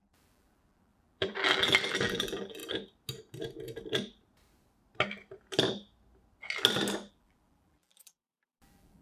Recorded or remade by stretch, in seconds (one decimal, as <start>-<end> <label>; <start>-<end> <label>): 0.0-2.6 remade; 2.6-7.1 recorded; 7.1-9.0 remade